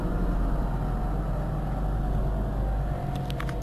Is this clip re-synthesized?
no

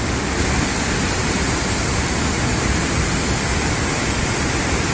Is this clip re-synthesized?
no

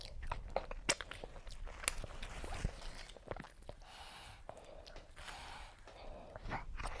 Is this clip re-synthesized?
no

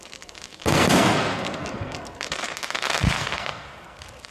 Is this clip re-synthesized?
yes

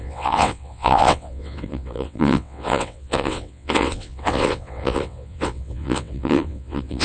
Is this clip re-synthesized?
yes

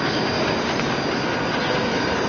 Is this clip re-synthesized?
no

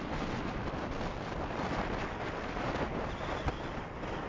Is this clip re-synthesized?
no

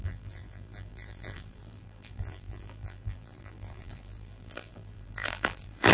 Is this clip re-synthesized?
yes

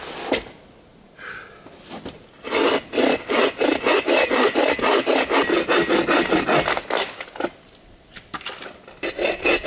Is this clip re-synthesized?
no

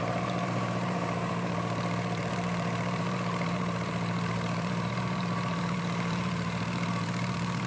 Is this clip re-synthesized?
yes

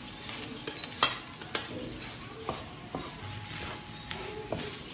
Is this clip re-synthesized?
no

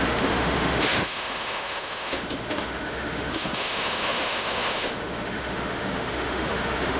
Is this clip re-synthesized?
yes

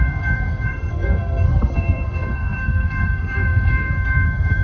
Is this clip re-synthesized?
yes